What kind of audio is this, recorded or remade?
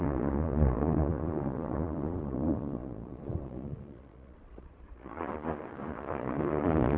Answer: remade